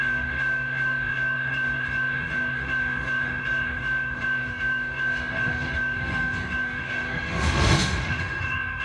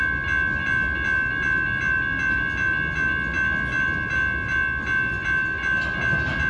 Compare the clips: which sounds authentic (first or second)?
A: second